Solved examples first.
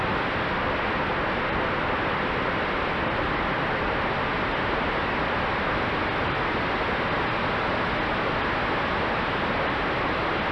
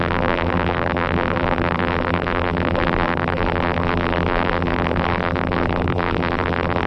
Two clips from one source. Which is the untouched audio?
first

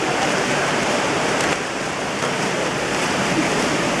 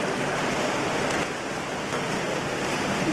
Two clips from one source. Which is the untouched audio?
second